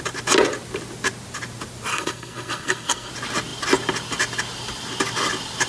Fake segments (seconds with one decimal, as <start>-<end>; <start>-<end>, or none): 1.9-3.1